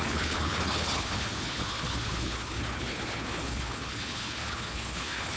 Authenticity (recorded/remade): remade